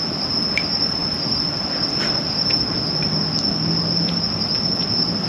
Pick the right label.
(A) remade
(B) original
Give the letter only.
B